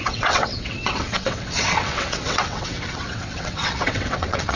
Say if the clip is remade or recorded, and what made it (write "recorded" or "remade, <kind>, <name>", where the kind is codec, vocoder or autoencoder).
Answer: remade, vocoder, WaveNeXt